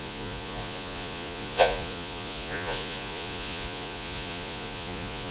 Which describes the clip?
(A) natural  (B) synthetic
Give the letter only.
B